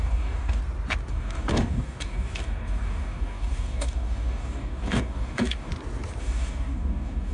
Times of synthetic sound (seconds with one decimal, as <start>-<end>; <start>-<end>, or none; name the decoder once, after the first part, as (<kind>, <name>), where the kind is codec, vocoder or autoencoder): 0.0-0.6 (codec, DAC); 1.1-5.7; 6.2-7.3